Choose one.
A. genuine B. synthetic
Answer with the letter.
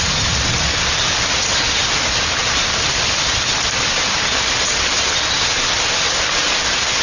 A